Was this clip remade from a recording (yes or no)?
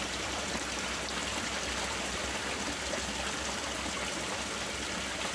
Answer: no